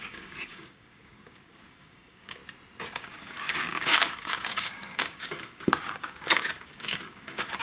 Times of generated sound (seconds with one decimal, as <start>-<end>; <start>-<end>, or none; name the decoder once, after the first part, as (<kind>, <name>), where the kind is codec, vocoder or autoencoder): 0.0-2.4 (codec, DAC); 3.0-7.6